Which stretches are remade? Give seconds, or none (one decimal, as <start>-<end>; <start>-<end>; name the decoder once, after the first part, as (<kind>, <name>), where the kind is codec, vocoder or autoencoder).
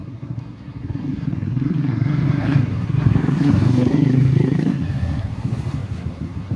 0.0-6.6 (codec, SNAC)